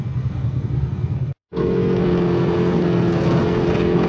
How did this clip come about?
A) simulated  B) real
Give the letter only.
A